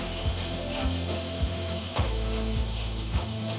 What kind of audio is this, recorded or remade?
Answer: remade